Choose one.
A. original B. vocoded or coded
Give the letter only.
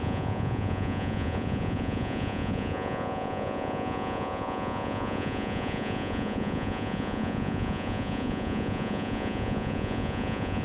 B